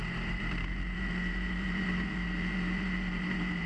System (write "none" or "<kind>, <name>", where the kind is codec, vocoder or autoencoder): vocoder, BigVGAN v2